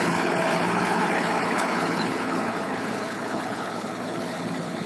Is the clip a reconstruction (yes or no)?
yes